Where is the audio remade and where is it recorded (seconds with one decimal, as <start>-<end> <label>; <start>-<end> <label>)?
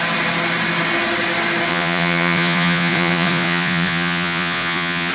0.0-1.7 recorded; 1.7-5.1 remade